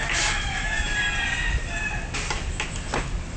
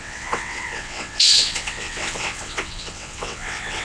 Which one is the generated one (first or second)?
second